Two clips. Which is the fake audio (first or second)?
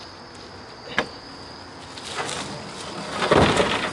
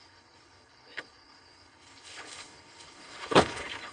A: second